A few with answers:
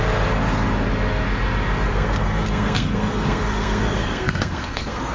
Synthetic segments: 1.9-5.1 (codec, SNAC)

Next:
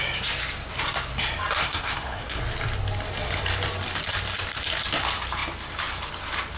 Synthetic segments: 1.6-2.4 (codec, SNAC)

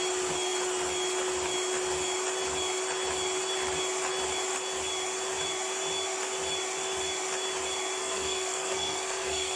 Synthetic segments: 8.0-9.6 (codec, SNAC)